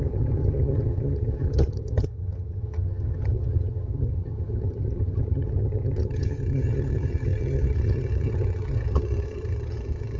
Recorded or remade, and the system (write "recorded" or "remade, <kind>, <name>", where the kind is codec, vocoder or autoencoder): remade, vocoder, HiFi-GAN